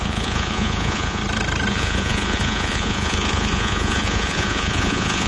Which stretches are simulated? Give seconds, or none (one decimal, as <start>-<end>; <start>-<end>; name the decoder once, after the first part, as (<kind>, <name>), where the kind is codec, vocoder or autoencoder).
0.0-1.2 (vocoder, Vocos); 1.7-5.3